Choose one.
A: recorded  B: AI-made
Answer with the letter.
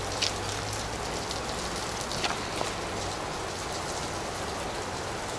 A